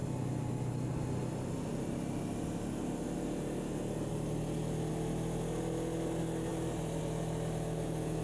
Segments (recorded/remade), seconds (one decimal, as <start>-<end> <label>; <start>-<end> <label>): 0.0-8.2 recorded